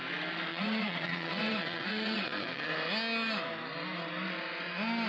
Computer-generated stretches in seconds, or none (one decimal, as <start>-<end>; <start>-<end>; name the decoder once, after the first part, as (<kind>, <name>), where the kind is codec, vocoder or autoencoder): 0.5-2.7 (vocoder, WaveNeXt)

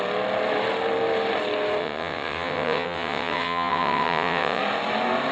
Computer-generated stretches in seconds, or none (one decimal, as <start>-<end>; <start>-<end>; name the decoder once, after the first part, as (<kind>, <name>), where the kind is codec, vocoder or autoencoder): 1.8-4.6 (vocoder, WaveNeXt)